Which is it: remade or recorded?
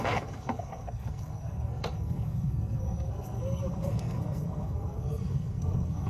remade